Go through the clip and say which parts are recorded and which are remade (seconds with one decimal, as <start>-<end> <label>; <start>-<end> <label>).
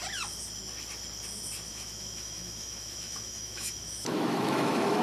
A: 0.0-1.7 recorded; 1.7-5.0 remade